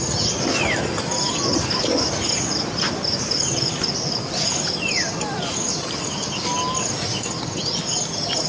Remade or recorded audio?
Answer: recorded